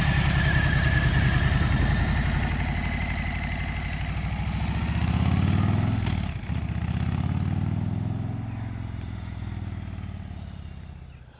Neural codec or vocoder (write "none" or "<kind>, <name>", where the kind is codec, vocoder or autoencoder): none